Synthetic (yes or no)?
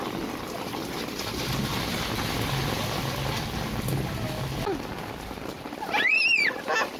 no